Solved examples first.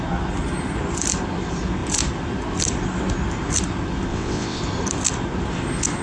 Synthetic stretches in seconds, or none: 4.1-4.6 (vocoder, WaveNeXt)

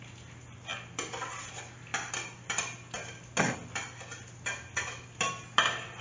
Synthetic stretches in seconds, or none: none

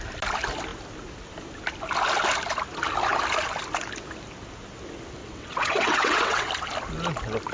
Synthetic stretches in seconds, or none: 5.2-6.5 (vocoder, WaveNeXt)

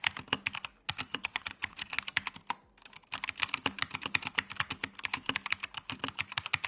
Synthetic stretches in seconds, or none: 1.1-2.0 (vocoder, WaveNeXt)

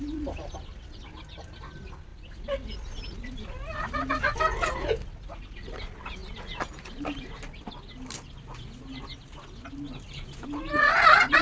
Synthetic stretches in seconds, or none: none